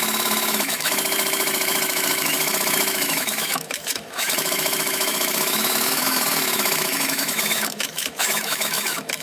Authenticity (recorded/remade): remade